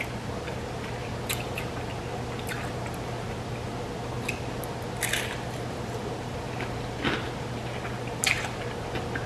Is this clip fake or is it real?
real